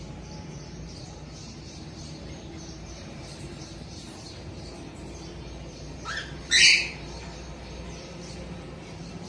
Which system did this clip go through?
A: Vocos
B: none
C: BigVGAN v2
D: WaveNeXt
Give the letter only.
C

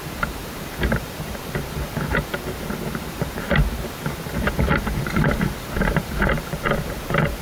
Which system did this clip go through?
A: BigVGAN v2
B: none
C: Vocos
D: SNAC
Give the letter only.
A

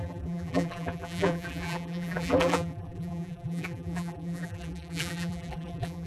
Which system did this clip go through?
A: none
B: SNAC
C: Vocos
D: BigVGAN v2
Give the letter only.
D